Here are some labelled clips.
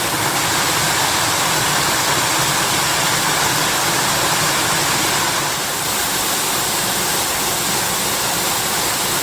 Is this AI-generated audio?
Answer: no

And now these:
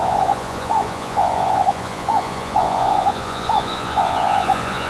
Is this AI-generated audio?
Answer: yes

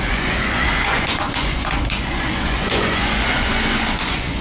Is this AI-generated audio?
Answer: yes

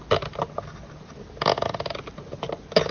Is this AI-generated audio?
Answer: no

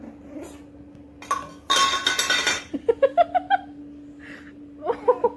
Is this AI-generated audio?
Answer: no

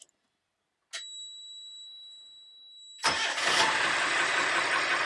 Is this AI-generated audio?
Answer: no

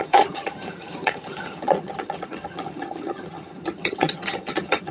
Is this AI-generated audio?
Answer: yes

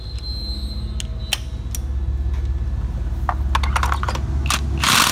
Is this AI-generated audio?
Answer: no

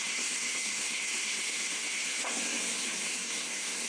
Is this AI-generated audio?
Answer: yes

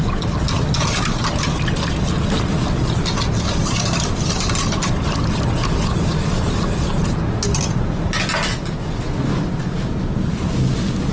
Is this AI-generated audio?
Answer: no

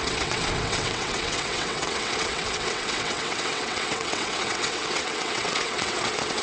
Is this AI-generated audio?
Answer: yes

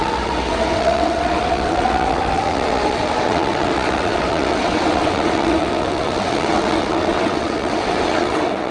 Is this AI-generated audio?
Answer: yes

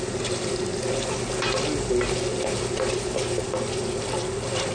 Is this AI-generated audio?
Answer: no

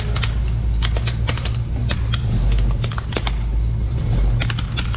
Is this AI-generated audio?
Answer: no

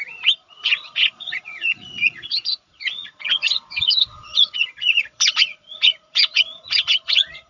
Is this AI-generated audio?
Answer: yes